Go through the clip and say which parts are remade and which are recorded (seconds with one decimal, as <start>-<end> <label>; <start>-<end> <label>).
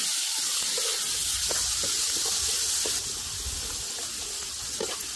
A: 0.0-0.8 remade; 0.8-5.2 recorded